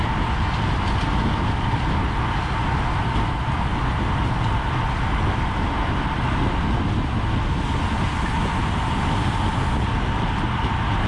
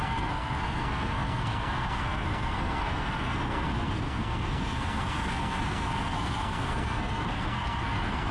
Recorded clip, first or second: first